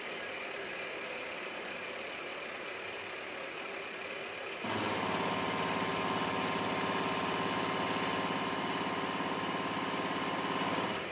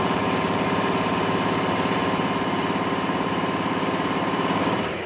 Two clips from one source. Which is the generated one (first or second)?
second